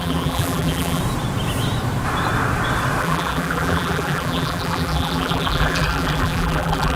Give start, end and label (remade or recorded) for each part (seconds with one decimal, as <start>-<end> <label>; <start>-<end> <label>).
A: 0.0-1.0 remade; 1.0-3.0 recorded; 3.0-7.0 remade